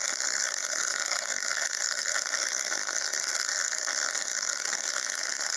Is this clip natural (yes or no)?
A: no